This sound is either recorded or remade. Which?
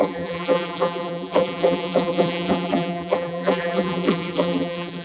remade